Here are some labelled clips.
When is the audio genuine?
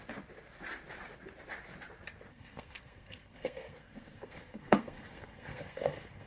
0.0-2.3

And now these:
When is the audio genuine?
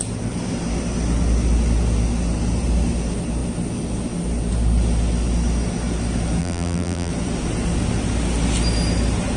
0.0-6.4; 7.1-9.4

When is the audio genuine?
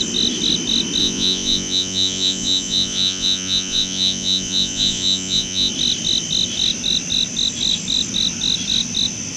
0.0-1.0; 5.7-9.4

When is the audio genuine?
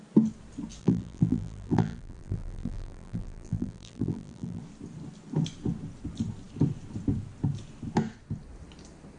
0.0-0.8; 4.6-9.2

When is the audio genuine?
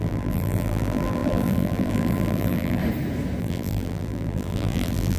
2.8-3.4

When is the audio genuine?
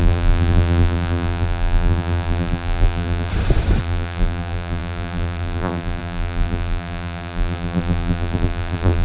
3.3-3.8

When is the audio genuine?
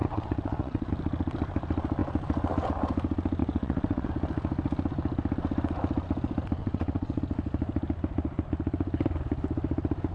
0.9-3.4; 4.1-6.6; 7.2-10.1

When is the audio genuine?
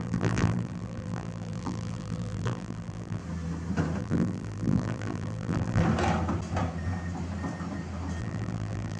3.2-4.0; 5.8-8.2